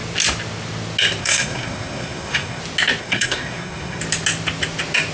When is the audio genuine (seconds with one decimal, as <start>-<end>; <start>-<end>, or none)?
0.0-1.2; 2.6-3.0; 4.0-5.1